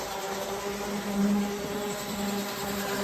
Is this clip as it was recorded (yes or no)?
yes